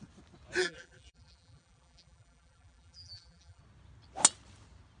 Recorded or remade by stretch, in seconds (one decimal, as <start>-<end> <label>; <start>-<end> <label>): 0.0-0.6 recorded; 0.6-3.6 remade; 3.6-5.0 recorded